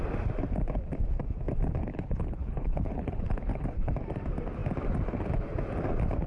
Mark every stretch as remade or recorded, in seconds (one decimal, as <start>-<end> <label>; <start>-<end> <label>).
0.0-1.9 recorded; 1.9-3.9 remade; 3.9-6.3 recorded